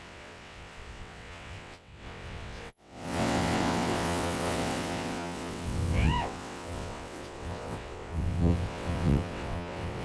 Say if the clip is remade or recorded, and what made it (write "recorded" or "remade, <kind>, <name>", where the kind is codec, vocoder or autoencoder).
remade, vocoder, WaveNeXt